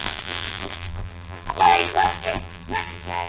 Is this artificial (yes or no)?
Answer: yes